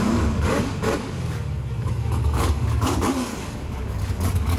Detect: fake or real fake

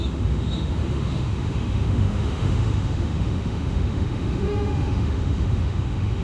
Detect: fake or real fake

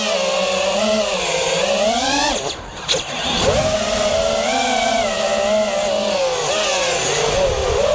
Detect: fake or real real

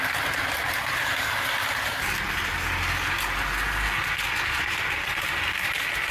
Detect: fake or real real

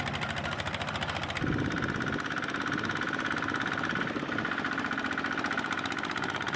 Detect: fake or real fake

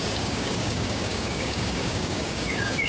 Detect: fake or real fake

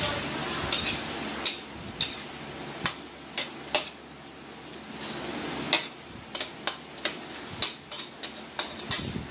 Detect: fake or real real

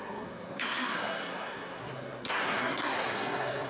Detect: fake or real fake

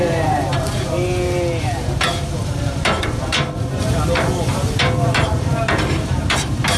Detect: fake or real fake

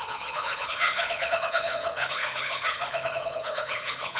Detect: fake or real fake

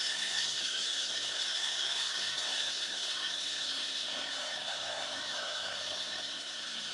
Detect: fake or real fake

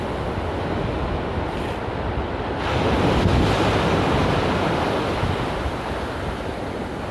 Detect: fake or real real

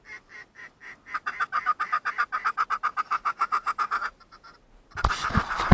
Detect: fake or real real